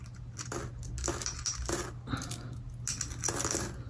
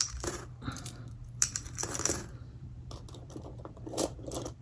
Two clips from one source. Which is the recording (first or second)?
first